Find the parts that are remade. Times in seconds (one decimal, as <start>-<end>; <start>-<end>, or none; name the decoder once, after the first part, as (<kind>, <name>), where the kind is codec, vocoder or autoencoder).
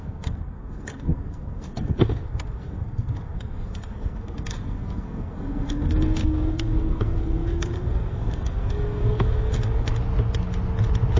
0.0-9.9 (codec, SNAC)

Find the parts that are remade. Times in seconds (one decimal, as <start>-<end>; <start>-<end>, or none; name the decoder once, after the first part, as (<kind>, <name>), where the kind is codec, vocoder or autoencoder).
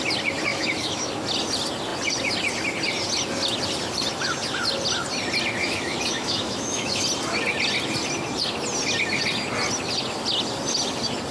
0.5-1.1 (autoencoder, DAC-VAE); 5.6-7.0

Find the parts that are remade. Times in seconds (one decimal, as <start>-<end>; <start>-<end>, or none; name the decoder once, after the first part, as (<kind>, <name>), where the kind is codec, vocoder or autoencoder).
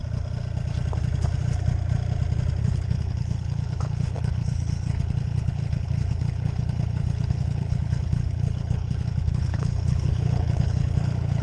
2.6-11.4 (codec, HILCodec)